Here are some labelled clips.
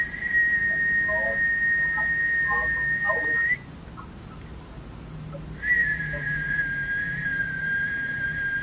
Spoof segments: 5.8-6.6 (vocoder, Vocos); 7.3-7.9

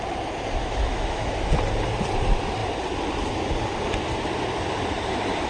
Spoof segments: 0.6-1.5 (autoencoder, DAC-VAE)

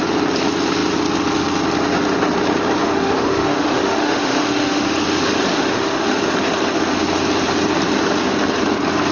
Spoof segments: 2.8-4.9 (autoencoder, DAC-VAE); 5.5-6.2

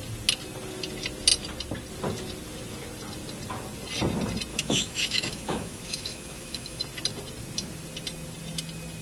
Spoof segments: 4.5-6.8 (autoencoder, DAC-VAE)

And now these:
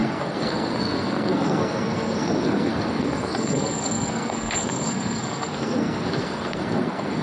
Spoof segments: 0.0-7.2 (codec, SNAC)

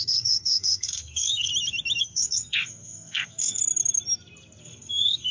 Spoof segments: 0.0-1.5 (codec, SNAC); 2.0-3.6; 4.6-5.3